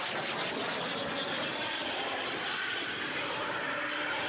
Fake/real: real